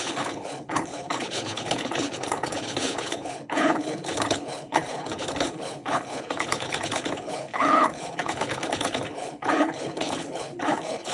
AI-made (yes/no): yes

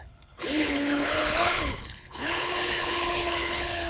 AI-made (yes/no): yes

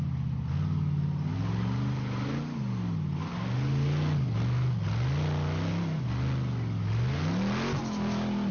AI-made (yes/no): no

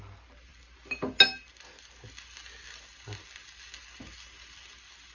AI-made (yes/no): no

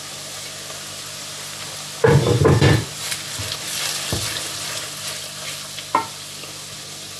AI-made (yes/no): no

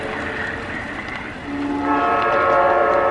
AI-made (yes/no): no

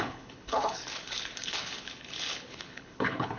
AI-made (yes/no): yes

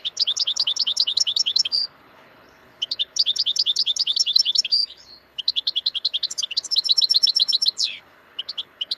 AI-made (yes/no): yes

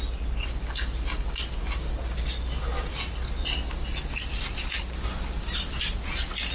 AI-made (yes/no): no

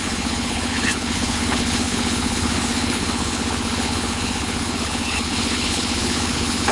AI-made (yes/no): yes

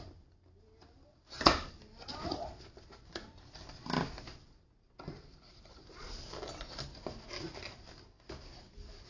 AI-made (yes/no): no